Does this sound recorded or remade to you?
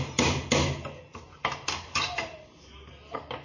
recorded